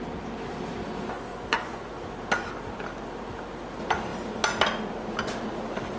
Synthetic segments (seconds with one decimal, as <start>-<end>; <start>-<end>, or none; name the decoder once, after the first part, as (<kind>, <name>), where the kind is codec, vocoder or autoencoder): 1.3-1.9 (vocoder, Vocos)